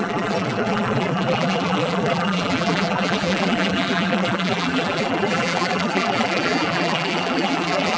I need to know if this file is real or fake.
fake